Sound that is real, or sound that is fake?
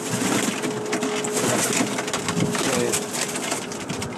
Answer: real